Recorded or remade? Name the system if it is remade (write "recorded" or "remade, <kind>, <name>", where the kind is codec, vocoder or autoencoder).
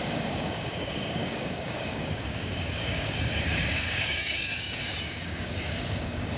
remade, codec, DAC